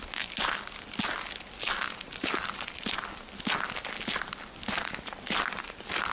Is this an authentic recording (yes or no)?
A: yes